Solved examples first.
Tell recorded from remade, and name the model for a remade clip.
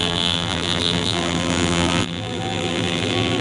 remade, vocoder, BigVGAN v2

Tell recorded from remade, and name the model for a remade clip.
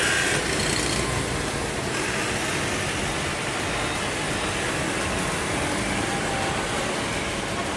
recorded